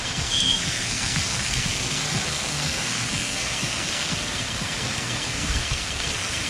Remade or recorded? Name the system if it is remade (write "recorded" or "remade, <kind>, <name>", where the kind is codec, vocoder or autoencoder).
remade, codec, SNAC